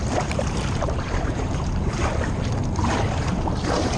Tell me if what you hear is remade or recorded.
remade